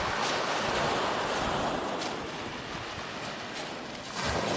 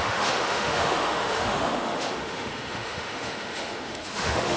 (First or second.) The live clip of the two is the first